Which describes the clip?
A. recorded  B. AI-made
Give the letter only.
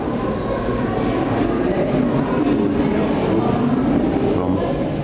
A